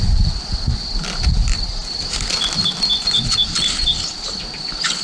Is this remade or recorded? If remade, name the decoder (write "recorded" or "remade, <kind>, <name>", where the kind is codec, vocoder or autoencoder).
remade, vocoder, BigVGAN v2